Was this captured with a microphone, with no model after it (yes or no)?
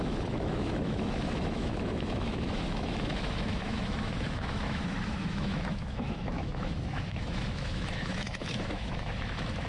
no